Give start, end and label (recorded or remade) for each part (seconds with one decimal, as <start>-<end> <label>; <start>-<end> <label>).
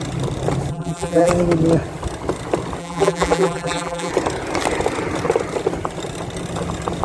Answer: 0.0-0.7 recorded; 0.7-1.3 remade; 1.3-2.8 recorded; 2.8-4.1 remade; 4.1-7.0 recorded